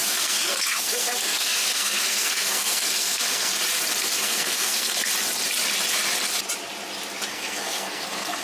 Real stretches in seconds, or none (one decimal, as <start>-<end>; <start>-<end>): 3.5-4.0; 5.1-7.3